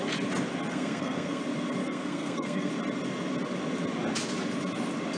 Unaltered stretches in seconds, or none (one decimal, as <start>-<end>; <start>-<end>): 0.0-0.7; 1.4-1.8; 2.7-5.2